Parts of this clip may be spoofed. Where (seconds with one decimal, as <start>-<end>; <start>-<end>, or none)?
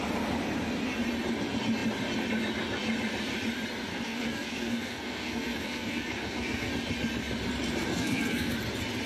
3.9-6.7; 7.9-8.5